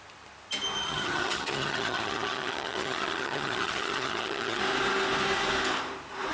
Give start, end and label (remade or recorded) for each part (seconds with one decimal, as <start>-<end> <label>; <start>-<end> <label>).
0.0-0.8 recorded; 0.8-4.6 remade; 4.6-6.3 recorded